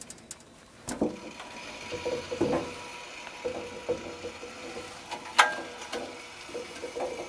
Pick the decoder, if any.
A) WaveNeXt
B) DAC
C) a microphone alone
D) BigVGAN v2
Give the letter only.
C